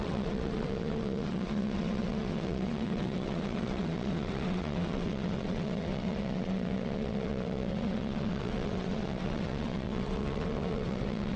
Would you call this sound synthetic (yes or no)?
yes